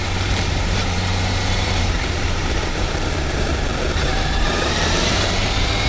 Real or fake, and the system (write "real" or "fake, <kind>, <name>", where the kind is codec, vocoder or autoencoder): fake, vocoder, BigVGAN v2